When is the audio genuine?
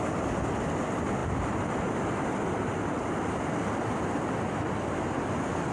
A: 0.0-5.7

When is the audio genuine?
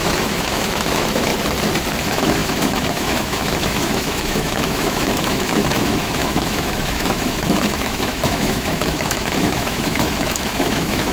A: 1.3-2.0